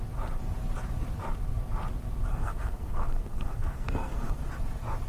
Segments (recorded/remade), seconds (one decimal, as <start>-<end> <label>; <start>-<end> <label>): 0.0-2.3 recorded; 2.3-4.5 remade; 4.5-5.1 recorded